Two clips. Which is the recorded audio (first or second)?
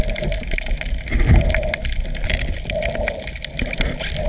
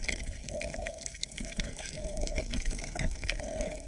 first